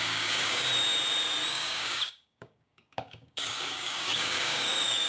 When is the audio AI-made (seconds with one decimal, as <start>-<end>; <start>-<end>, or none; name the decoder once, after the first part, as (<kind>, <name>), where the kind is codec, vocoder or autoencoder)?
0.0-0.7 (codec, DAC); 1.5-5.1